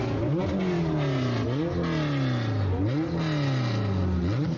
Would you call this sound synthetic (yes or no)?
no